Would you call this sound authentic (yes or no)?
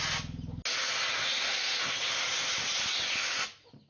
yes